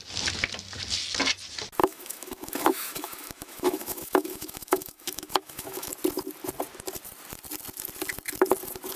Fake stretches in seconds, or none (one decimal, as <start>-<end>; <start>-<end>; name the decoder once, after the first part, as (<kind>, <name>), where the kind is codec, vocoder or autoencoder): 1.8-5.9 (autoencoder, DAC-VAE)